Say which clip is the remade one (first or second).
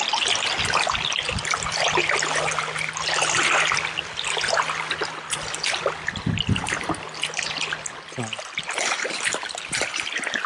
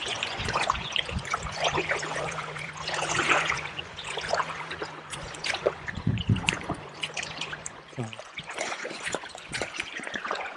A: second